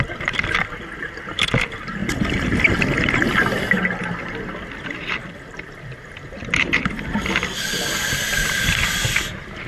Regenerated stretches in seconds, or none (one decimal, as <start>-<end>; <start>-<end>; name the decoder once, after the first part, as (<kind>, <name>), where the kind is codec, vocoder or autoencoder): 0.0-2.0 (vocoder, BigVGAN v2); 5.2-9.7